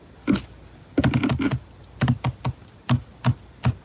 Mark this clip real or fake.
real